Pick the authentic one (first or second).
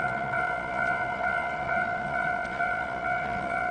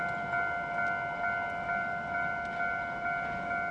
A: second